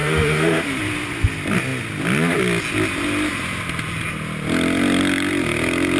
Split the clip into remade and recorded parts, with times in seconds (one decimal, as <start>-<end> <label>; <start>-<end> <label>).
0.0-0.8 remade; 0.8-6.0 recorded

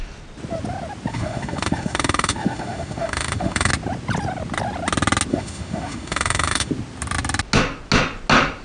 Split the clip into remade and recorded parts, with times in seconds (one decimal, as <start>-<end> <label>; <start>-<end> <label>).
0.0-1.1 recorded; 1.1-3.7 remade; 3.7-5.3 recorded; 5.3-6.7 remade; 6.7-8.6 recorded

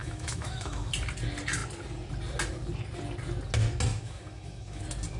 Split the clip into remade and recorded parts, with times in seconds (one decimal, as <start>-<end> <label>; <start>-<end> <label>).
0.0-0.9 remade; 0.9-3.9 recorded; 3.9-4.8 remade; 4.8-5.2 recorded